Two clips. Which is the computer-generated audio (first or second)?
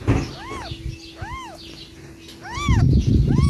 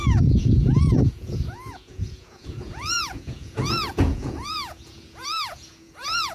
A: second